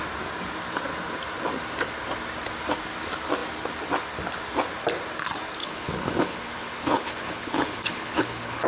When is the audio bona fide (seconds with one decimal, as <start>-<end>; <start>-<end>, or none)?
0.0-5.6